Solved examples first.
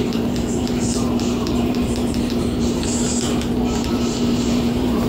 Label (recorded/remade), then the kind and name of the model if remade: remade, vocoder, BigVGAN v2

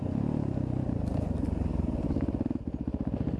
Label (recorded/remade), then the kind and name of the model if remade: recorded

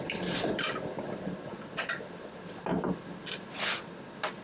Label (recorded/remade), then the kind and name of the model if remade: remade, vocoder, BigVGAN v2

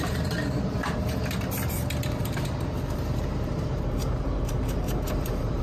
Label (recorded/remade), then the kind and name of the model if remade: remade, vocoder, BigVGAN v2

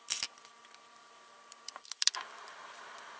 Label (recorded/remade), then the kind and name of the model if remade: remade, vocoder, BigVGAN v2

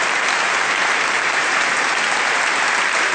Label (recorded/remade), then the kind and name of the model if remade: remade, vocoder, BigVGAN v2